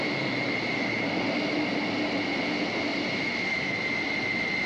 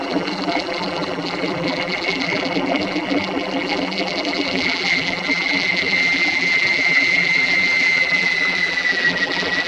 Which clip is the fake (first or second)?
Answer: second